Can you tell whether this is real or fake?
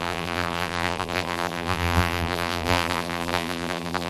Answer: fake